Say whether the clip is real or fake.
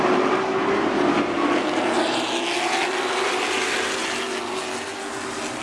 real